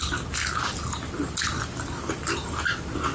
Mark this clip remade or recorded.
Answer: recorded